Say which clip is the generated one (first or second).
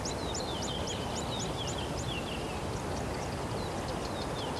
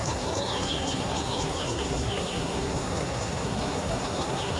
second